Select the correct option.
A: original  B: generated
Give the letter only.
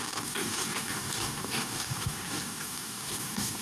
B